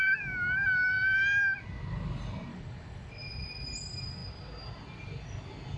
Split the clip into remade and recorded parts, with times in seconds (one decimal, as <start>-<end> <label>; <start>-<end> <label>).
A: 0.0-2.5 recorded; 2.5-3.1 remade; 3.1-5.8 recorded